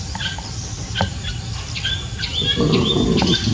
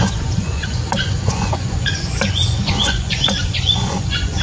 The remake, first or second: second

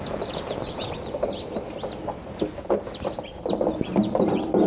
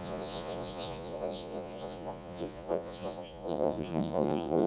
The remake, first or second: second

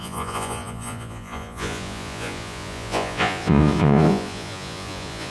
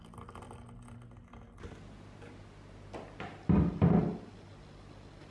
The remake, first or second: first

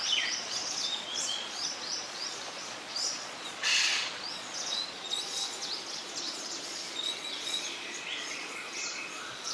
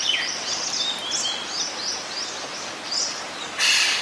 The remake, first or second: first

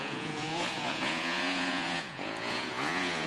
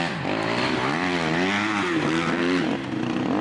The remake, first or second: first